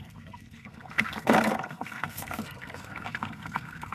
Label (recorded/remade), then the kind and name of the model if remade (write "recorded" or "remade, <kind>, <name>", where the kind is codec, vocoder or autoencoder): remade, codec, SNAC